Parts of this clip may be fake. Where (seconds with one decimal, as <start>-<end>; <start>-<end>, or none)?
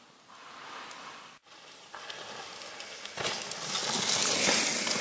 none